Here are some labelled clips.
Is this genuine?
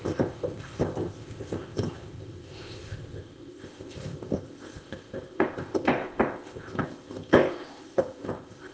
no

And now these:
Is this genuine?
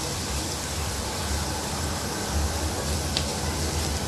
yes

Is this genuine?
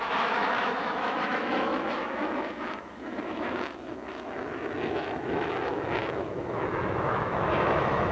no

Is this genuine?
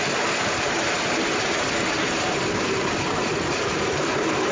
no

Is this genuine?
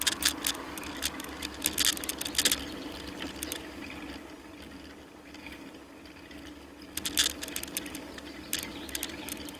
yes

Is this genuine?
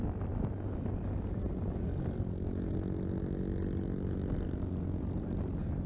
yes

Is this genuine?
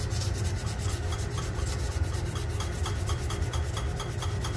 yes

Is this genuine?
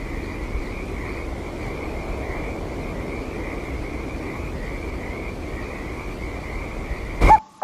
yes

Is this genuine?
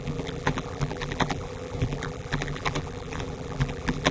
no